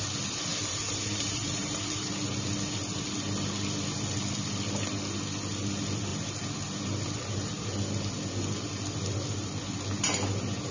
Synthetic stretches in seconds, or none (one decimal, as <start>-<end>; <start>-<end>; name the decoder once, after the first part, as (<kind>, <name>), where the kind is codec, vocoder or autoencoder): 0.5-2.1 (vocoder, BigVGAN v2); 6.1-6.8